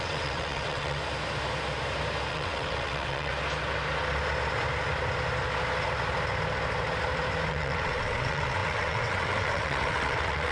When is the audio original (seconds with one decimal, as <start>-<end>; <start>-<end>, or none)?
1.0-2.3; 3.3-7.5